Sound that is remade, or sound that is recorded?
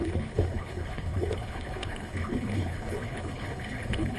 remade